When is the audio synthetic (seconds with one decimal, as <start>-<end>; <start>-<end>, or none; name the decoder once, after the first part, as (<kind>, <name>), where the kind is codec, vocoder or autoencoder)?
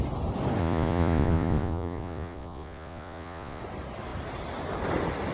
0.6-3.6 (vocoder, Vocos)